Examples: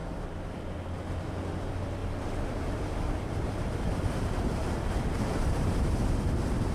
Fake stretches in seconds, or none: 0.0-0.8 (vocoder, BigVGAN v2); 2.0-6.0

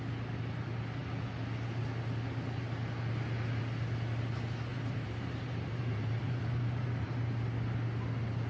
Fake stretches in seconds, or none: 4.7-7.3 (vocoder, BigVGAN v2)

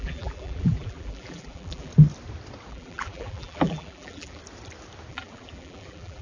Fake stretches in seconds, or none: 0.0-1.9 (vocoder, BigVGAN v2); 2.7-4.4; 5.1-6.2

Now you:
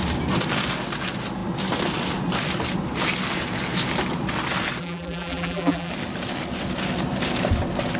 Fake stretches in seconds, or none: 4.8-5.9 (vocoder, BigVGAN v2)

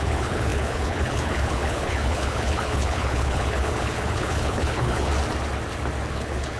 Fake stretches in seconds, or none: 0.0-5.1 (codec, HILCodec); 6.1-6.6

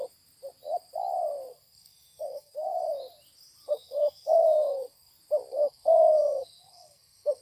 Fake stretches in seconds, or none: 1.5-2.8 (codec, SNAC); 3.7-5.1; 5.5-7.4